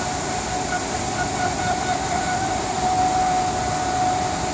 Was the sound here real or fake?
real